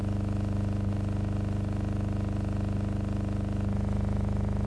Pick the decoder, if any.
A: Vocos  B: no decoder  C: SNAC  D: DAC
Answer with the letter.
B